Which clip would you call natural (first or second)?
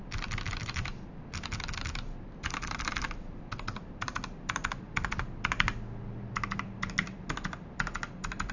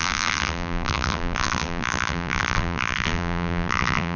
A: first